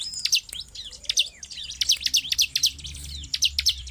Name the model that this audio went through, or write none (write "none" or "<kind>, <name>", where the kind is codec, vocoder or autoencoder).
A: none